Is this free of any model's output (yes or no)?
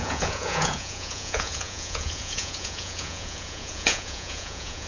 no